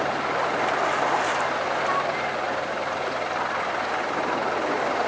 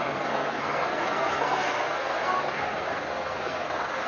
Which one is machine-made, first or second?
second